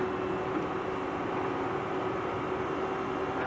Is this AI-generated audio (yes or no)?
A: no